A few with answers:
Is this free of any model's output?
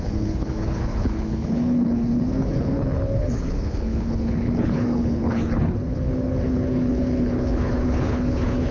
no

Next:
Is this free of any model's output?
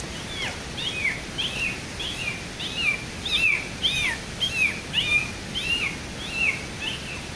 yes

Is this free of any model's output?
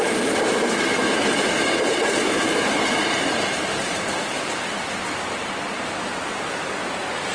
yes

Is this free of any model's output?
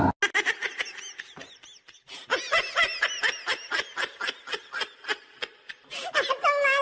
yes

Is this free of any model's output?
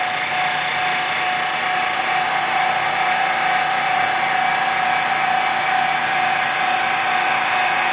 yes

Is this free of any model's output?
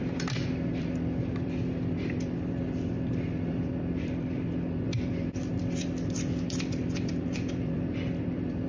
no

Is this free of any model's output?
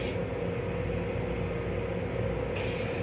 yes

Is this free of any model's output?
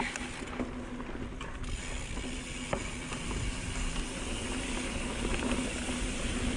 yes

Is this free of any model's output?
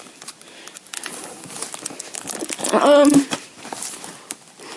yes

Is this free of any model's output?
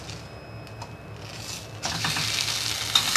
yes